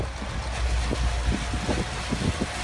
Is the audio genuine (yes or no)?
yes